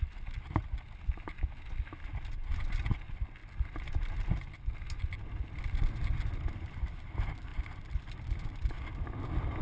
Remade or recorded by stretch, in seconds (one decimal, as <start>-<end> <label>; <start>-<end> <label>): 0.0-9.6 recorded